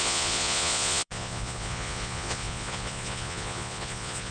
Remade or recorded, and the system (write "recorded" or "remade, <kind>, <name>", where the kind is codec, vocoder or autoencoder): remade, vocoder, Vocos